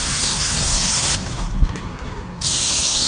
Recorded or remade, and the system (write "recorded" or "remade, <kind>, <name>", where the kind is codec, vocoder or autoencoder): remade, codec, SNAC